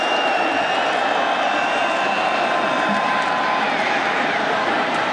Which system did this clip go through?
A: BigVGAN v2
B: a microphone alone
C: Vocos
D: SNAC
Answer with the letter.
A